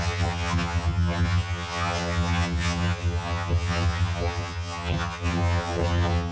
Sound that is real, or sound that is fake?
fake